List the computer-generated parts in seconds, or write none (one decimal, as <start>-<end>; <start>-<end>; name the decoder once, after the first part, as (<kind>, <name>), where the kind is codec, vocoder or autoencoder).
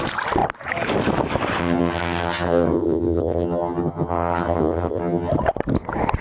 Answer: 1.6-5.3 (vocoder, HiFi-GAN)